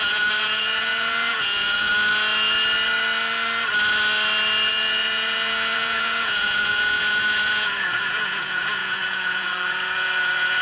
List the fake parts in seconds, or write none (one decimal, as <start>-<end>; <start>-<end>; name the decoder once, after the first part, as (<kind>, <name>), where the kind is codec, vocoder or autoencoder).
0.0-1.9 (vocoder, Vocos); 4.7-10.6